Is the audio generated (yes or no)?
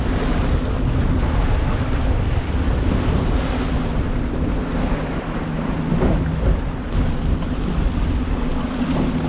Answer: no